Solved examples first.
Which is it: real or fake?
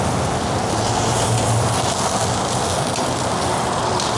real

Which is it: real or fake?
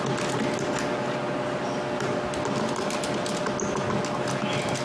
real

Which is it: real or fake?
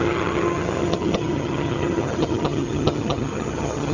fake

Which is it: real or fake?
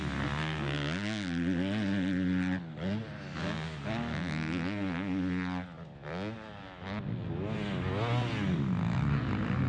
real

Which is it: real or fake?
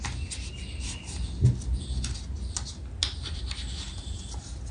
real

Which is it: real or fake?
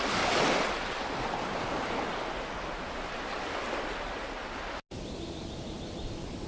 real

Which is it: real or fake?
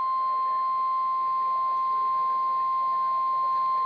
real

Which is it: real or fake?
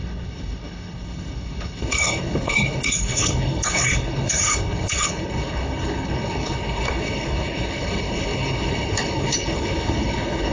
fake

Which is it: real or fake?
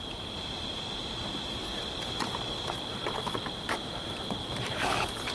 real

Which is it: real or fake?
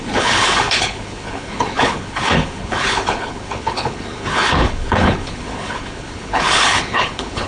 fake